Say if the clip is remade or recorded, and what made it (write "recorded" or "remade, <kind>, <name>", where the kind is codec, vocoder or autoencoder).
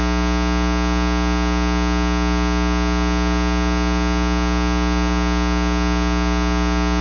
recorded